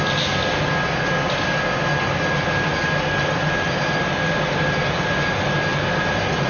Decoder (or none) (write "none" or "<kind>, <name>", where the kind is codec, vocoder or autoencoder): none